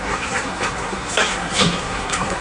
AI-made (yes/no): yes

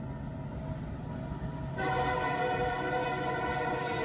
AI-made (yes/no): no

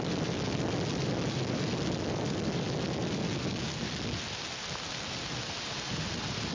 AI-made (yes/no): no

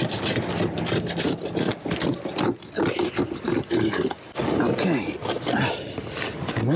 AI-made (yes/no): no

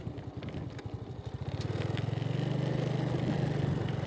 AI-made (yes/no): no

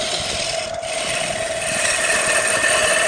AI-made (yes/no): no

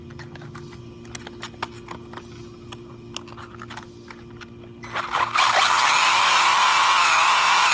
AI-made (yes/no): no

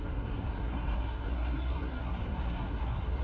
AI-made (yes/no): yes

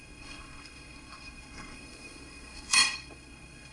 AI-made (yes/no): yes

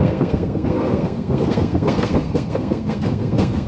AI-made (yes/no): yes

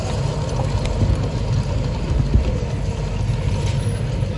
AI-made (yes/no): no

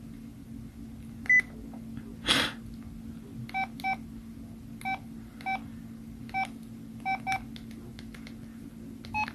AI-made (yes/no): no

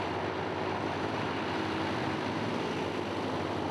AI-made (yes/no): no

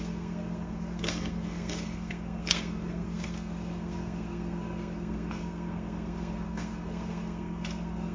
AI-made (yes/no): yes